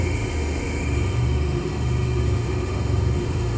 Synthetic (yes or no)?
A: yes